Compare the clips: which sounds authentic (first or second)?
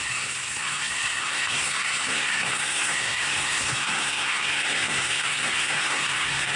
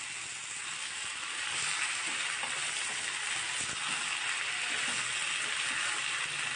second